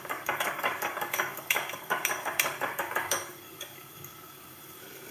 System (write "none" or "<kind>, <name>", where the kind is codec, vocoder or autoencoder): codec, DAC